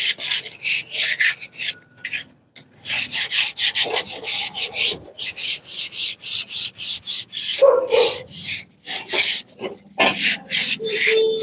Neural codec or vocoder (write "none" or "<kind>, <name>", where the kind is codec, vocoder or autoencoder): none